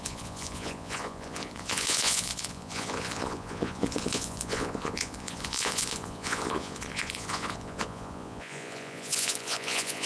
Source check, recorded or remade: remade